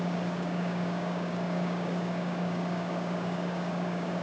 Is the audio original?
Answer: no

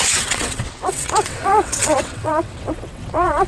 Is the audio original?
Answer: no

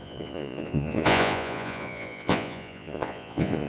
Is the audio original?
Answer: no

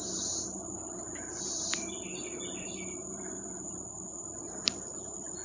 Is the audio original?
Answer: no